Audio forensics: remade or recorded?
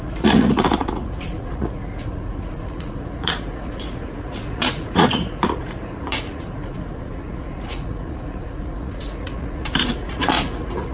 remade